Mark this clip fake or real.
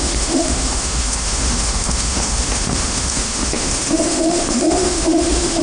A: fake